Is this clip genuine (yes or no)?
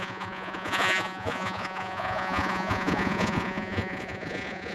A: no